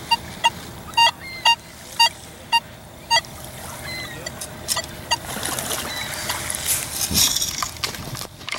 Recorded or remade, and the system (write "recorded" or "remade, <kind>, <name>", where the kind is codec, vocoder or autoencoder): recorded